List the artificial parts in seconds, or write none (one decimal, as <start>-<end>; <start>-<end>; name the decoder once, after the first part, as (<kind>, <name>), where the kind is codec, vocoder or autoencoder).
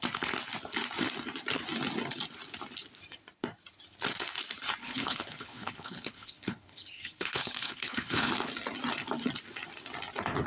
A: 4.8-8.3 (codec, HILCodec)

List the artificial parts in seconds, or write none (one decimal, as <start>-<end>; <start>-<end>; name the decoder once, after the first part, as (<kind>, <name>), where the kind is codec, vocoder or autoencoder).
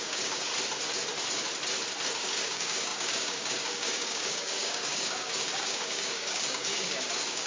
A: 0.0-0.5 (codec, DAC); 2.1-7.5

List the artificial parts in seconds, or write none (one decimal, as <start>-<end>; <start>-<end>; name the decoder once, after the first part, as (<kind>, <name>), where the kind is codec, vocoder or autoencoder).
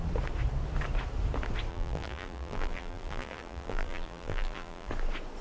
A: 1.7-4.9 (vocoder, BigVGAN v2)